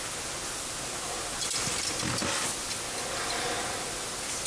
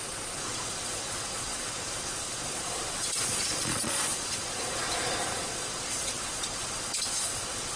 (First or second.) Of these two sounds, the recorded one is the first